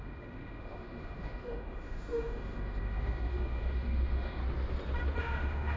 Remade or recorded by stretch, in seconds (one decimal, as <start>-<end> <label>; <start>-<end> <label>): 0.0-4.4 remade; 4.4-5.2 recorded; 5.2-5.8 remade